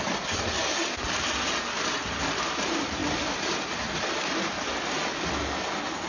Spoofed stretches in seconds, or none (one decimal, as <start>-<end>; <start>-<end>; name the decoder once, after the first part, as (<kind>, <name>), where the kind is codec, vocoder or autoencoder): 3.0-4.3 (vocoder, BigVGAN v2)